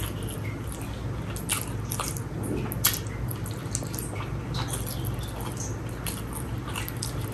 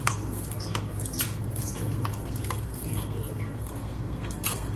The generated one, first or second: second